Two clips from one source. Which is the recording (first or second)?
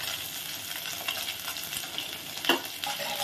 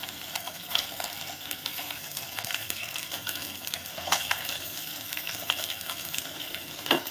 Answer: first